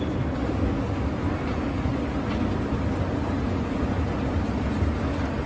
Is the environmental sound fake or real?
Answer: real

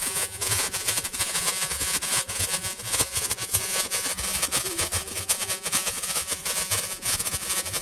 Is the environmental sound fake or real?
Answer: fake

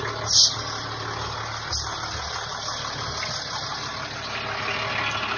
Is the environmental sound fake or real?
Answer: real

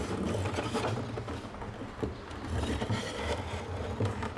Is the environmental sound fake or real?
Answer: real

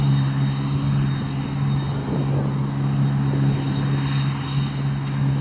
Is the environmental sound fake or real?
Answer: real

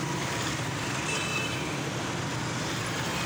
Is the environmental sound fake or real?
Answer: real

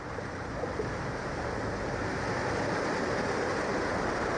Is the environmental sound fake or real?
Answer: fake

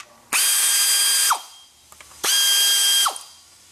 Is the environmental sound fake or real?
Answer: real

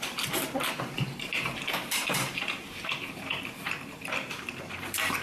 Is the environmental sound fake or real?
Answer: fake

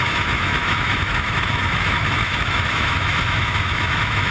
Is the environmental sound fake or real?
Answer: fake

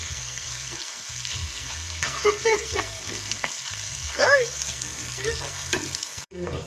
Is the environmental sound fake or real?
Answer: fake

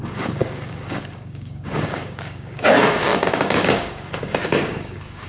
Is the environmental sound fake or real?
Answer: fake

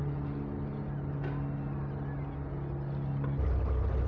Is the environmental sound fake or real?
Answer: real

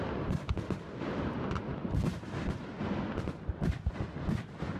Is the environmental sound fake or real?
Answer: real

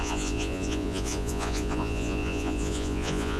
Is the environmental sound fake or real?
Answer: fake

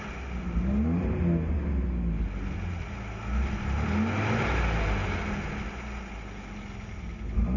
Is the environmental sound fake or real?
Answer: real